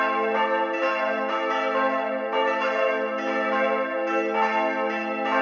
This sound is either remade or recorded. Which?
recorded